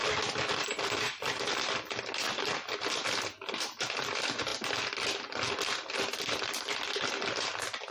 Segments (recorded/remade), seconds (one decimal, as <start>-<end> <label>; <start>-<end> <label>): 0.0-7.9 recorded